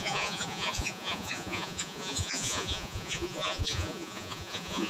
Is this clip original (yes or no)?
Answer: no